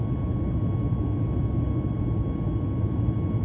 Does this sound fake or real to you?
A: real